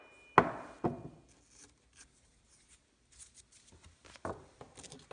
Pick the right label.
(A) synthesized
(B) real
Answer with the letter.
B